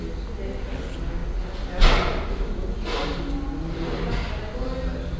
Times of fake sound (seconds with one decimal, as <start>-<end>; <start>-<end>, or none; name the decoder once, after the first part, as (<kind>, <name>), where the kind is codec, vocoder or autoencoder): none